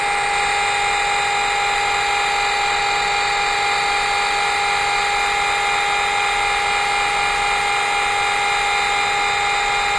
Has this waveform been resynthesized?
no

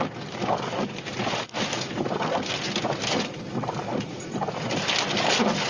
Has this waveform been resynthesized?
no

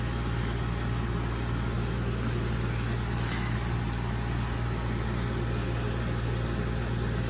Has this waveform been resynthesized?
no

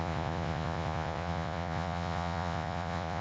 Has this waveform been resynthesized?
yes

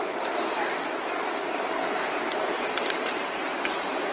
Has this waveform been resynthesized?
yes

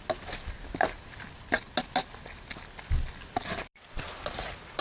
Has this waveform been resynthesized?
no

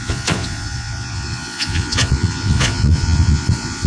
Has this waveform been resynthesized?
yes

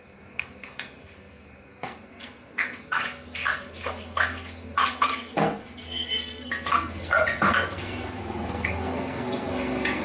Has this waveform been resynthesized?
yes